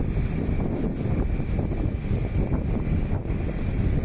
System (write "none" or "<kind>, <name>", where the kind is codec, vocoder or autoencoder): none